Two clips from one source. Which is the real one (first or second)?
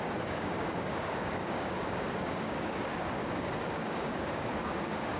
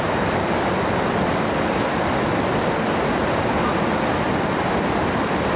second